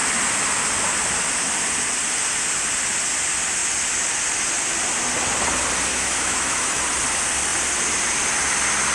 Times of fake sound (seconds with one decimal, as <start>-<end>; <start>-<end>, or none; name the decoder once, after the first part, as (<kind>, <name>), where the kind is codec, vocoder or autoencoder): 5.9-6.8 (autoencoder, DAC-VAE)